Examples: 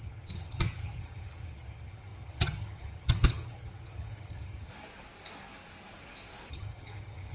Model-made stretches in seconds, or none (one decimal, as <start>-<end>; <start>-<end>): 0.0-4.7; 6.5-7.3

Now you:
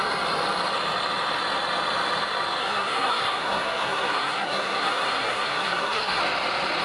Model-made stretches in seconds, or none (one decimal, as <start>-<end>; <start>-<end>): 2.6-6.2

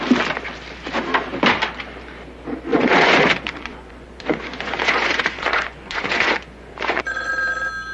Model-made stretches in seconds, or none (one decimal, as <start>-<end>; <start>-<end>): 2.7-7.3

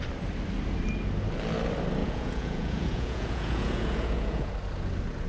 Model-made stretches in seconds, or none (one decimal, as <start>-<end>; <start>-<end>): 2.0-4.5

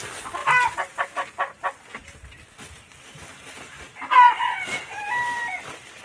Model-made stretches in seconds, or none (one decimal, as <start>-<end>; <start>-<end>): 0.4-1.1